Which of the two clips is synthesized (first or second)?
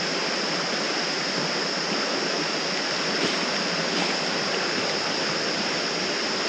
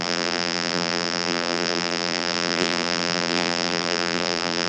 second